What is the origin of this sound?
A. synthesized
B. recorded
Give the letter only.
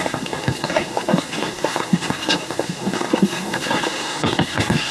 A